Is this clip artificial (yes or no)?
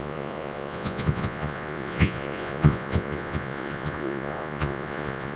yes